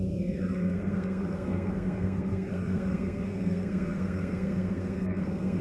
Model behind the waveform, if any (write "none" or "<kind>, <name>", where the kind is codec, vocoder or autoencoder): codec, SNAC